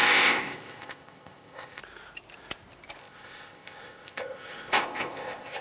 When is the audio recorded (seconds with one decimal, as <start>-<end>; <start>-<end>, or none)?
1.8-3.0

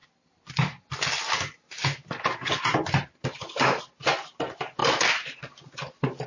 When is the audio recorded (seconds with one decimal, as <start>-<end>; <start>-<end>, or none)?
0.0-6.3

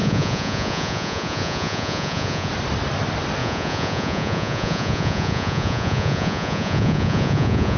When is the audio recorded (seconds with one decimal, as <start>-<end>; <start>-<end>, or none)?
2.5-3.4

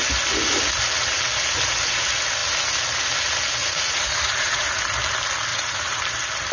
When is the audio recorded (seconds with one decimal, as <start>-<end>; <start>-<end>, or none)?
0.0-3.6; 4.8-5.5; 6.0-6.5

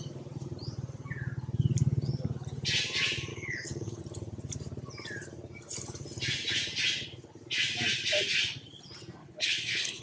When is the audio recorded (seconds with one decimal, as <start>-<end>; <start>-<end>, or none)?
0.0-3.3; 4.0-9.2

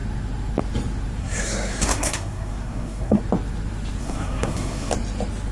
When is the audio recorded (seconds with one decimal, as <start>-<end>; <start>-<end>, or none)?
0.0-1.2; 3.2-4.0; 4.9-5.5